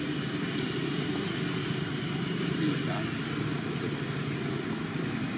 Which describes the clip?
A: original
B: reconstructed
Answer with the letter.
A